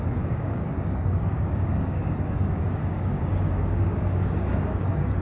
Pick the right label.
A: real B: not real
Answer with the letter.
B